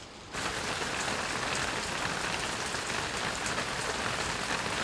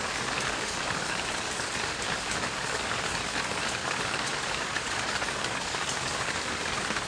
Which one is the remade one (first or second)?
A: second